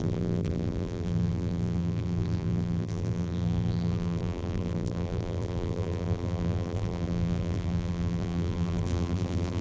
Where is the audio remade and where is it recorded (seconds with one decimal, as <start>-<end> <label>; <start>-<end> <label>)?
0.0-9.6 remade